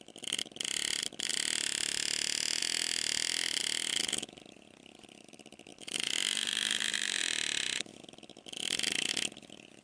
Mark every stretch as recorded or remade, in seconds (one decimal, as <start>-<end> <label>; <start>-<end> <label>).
0.0-5.7 recorded; 5.7-7.2 remade; 7.2-9.8 recorded